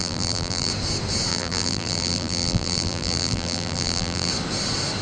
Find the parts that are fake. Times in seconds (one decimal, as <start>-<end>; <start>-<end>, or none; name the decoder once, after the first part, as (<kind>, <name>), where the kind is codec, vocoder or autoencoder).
0.0-0.7 (vocoder, BigVGAN v2); 1.3-4.3